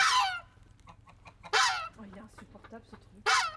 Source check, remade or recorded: recorded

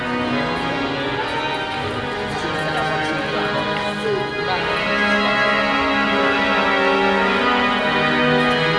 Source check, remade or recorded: recorded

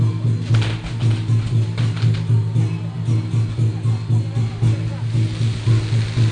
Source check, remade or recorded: recorded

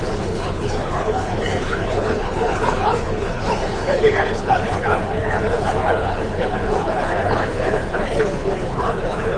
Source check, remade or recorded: remade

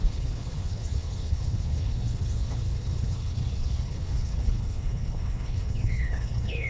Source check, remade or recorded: remade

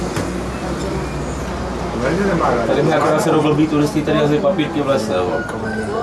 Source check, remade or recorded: recorded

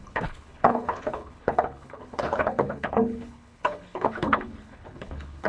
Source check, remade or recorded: remade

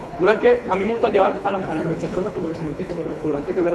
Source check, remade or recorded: remade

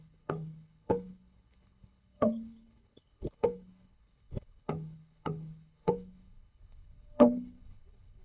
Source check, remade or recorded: remade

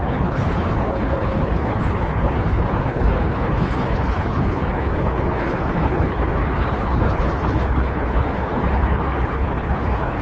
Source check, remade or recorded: remade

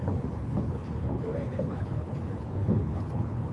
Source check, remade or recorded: remade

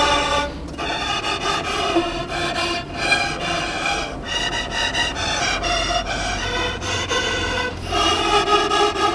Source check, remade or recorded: recorded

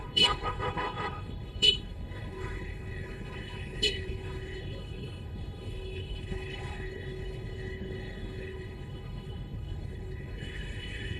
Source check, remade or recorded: remade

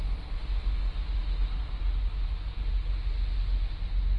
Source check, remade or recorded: recorded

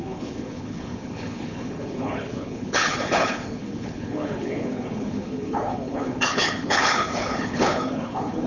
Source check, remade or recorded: remade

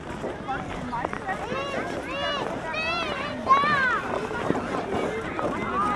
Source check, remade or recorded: recorded